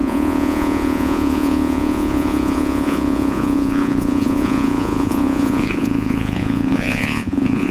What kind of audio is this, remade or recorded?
remade